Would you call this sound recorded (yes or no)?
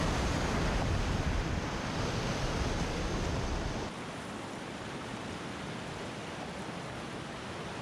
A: yes